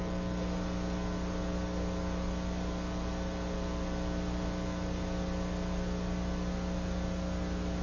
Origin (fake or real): real